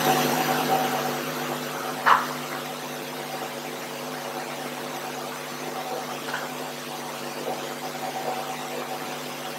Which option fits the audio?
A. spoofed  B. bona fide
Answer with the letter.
A